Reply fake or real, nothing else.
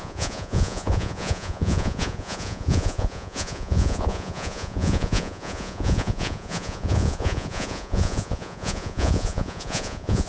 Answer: fake